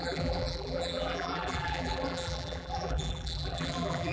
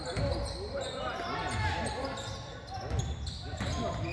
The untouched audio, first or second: second